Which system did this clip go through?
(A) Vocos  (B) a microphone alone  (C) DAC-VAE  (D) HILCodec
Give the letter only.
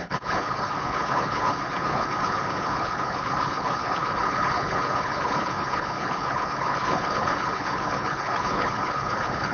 D